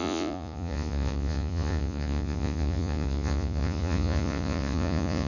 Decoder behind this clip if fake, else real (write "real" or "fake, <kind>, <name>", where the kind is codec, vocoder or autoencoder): fake, vocoder, Vocos